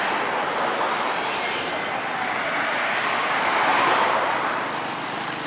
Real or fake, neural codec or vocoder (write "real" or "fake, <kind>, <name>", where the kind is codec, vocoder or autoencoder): real